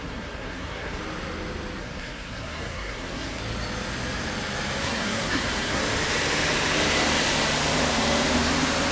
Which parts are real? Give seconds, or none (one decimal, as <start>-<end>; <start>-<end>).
1.0-1.8; 3.4-4.8; 5.8-8.9